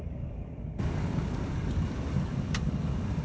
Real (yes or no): no